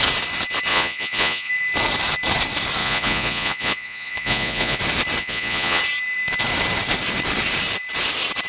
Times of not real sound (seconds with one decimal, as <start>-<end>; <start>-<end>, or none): 0.7-1.5; 2.8-4.8; 5.2-5.8